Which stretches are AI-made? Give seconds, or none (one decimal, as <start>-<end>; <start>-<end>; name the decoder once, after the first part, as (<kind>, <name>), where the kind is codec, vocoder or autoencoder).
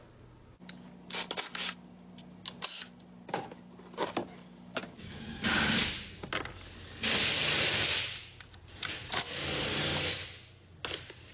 none